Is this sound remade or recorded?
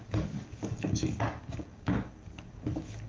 remade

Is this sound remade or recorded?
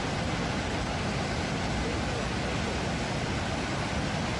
recorded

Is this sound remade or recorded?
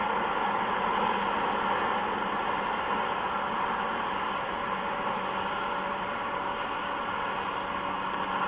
recorded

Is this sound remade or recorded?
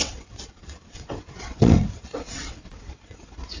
remade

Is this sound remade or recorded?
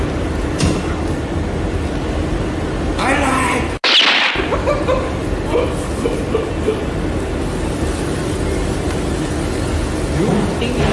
recorded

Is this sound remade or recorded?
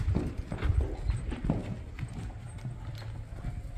recorded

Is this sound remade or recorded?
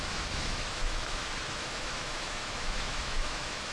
remade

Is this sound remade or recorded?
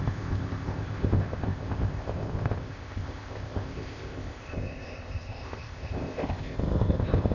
remade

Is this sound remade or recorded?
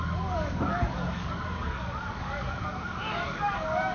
remade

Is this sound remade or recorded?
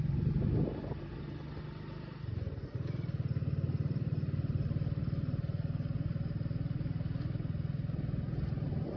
recorded